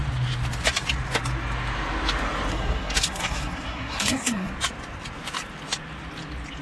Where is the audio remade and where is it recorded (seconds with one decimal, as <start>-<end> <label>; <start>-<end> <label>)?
0.0-2.5 recorded; 2.5-4.5 remade; 4.5-6.6 recorded